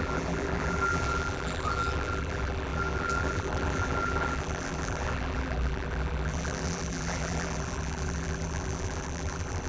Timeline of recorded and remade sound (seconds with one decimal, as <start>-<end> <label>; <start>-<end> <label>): 0.0-9.7 remade